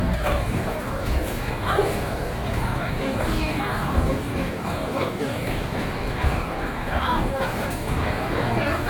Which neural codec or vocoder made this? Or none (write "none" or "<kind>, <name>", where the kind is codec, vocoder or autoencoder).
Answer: codec, DAC